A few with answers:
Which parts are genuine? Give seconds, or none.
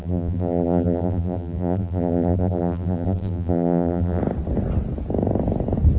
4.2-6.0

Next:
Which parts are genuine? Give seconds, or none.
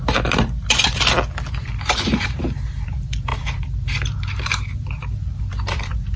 0.0-1.5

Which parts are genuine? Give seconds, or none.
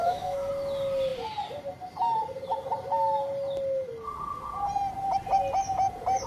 0.5-6.3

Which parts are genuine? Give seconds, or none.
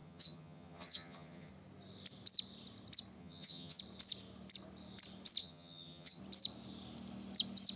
1.5-3.2; 3.8-5.4; 6.2-7.8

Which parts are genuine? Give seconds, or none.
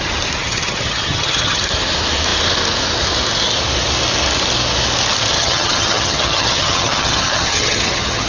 0.0-0.4; 1.6-5.3